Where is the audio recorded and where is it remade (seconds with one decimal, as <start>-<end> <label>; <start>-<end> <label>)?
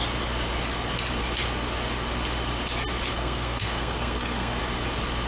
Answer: 0.0-3.1 recorded; 3.1-4.6 remade; 4.6-5.3 recorded